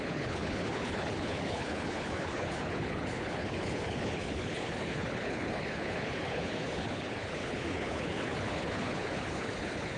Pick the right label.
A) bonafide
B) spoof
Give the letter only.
B